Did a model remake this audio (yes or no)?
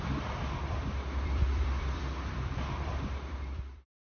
yes